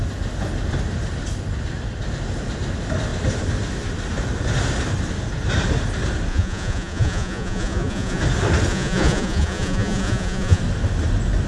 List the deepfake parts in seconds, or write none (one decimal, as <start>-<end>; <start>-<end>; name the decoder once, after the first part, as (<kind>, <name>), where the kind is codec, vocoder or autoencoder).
6.3-8.2 (vocoder, Vocos); 8.7-10.6

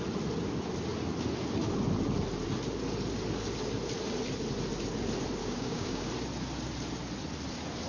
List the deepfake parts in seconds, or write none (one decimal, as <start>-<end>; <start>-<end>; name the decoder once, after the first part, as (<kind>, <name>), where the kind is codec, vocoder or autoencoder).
5.4-6.1 (codec, DAC)

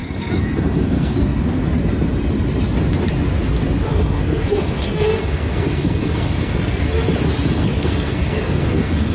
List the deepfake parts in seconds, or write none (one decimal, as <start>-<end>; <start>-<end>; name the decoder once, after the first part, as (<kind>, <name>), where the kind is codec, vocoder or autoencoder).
0.0-1.6 (codec, SNAC); 3.9-6.8; 7.6-9.1

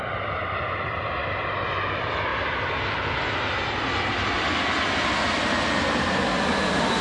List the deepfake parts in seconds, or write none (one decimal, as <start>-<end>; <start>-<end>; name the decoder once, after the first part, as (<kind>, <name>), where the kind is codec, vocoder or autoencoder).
none

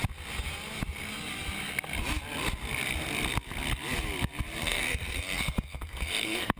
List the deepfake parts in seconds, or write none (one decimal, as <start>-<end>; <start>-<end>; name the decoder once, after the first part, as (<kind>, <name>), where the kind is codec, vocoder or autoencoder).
4.6-6.6 (codec, SNAC)